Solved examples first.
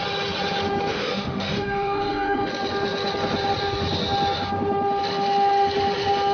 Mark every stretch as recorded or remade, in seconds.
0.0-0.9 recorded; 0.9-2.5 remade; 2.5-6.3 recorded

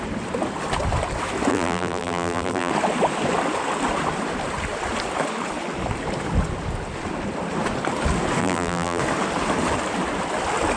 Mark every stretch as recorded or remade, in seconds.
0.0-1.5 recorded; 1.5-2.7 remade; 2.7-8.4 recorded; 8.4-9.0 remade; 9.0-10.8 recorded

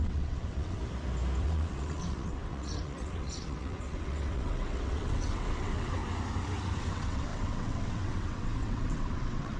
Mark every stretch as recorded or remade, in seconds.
0.0-0.8 remade; 0.8-1.4 recorded; 1.4-6.0 remade; 6.0-6.8 recorded; 6.8-9.6 remade

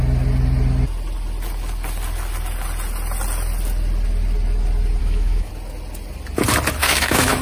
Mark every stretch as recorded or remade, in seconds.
0.0-5.0 recorded; 5.0-5.5 remade; 5.5-6.8 recorded; 6.8-7.4 remade